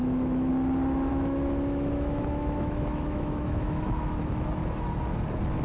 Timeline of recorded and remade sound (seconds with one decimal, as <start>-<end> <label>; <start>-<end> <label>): 0.0-0.5 remade; 0.5-1.1 recorded; 1.1-4.5 remade; 4.5-5.6 recorded